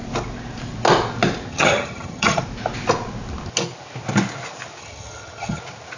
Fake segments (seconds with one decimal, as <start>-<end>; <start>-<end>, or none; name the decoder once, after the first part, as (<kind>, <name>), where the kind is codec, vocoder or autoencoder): 1.5-2.4 (vocoder, HiFi-GAN); 4.8-5.6

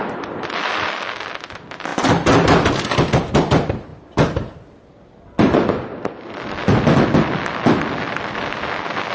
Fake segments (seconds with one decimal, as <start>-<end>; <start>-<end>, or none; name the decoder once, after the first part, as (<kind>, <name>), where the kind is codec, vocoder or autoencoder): none

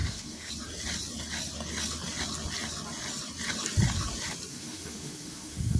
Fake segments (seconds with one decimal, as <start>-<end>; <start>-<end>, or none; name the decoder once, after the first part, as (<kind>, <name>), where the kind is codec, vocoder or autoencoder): 0.0-0.5 (autoencoder, DAC-VAE); 4.5-5.8

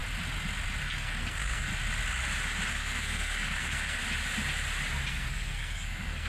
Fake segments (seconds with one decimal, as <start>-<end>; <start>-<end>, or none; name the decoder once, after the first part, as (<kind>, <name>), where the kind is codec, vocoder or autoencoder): 0.8-1.7 (codec, SNAC); 2.7-4.0; 5.1-6.3

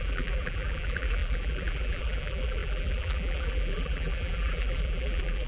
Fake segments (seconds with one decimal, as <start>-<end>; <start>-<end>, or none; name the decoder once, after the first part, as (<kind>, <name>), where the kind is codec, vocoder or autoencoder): 0.0-5.5 (vocoder, BigVGAN v2)